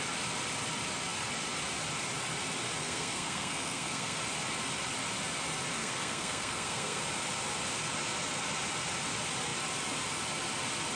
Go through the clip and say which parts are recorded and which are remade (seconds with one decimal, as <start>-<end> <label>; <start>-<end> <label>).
0.0-2.8 recorded; 2.8-4.2 remade; 4.2-5.8 recorded; 5.8-7.0 remade; 7.0-11.0 recorded